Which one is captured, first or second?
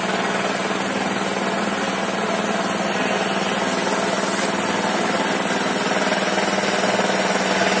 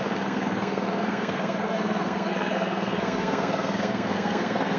first